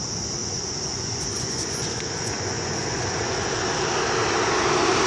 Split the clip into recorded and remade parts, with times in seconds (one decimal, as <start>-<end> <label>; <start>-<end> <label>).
0.0-0.4 recorded; 0.4-3.5 remade; 3.5-5.1 recorded